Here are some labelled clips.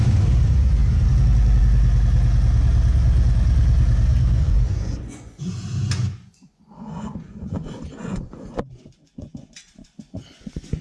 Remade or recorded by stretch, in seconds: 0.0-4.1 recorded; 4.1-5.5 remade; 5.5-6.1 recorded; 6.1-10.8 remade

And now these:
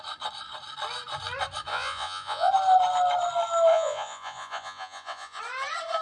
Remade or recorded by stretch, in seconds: 0.0-1.7 recorded; 1.7-2.5 remade; 2.5-3.7 recorded; 3.7-5.4 remade; 5.4-6.0 recorded

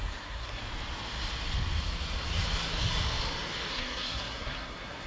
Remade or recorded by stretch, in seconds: 0.0-0.6 remade; 0.6-3.7 recorded; 3.7-5.1 remade

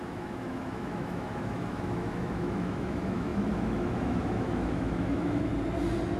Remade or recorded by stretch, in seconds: 0.0-5.5 remade; 5.5-6.2 recorded

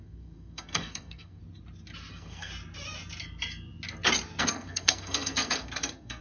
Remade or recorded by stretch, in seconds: 0.0-1.4 remade; 1.4-2.1 recorded; 2.1-2.5 remade; 2.5-4.4 recorded; 4.4-6.2 remade